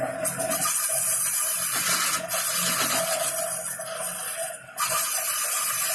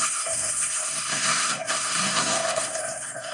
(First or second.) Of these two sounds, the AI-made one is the second